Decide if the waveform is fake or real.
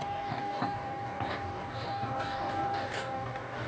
fake